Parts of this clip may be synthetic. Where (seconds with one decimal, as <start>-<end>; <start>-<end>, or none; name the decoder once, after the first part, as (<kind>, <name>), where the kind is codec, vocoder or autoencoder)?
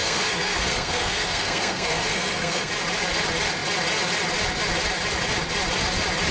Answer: 0.0-2.7 (codec, SNAC)